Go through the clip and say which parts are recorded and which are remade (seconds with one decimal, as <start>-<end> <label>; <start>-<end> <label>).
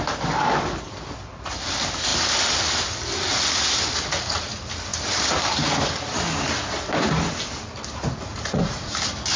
0.0-8.3 recorded; 8.3-8.9 remade; 8.9-9.4 recorded